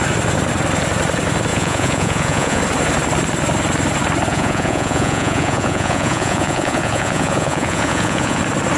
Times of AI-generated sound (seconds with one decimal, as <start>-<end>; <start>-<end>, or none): 1.5-2.6; 4.3-8.4